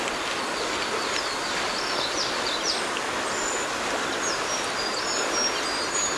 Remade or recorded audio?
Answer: recorded